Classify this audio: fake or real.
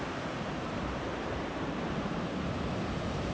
fake